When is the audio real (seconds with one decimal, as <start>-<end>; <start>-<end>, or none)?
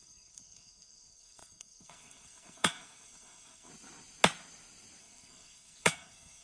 3.7-5.0